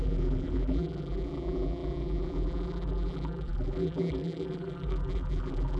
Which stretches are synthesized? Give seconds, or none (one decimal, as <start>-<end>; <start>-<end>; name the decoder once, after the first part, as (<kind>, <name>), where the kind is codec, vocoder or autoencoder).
0.0-5.8 (vocoder, BigVGAN v2)